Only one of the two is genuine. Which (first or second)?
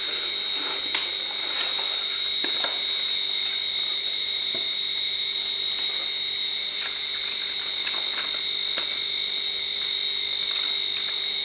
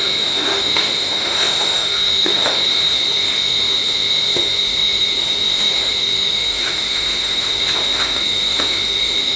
first